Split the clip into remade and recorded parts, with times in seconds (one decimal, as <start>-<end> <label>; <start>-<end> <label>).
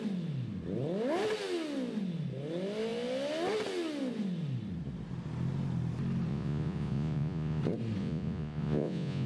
0.0-6.3 recorded; 6.3-7.6 remade; 7.6-8.0 recorded; 8.0-9.3 remade